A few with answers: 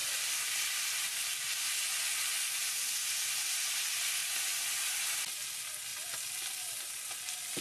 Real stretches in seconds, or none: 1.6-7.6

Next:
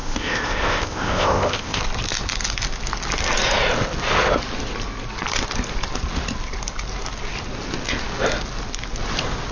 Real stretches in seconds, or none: 1.8-9.5

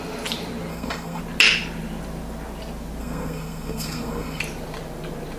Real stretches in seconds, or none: 0.0-0.7; 1.2-3.0; 4.4-5.4

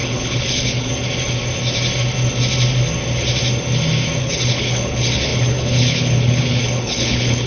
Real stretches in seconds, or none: 0.9-4.2

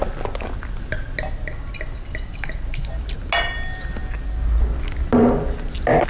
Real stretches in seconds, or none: 0.0-6.1